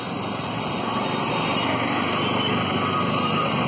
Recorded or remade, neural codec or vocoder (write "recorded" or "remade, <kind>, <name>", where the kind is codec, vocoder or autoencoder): recorded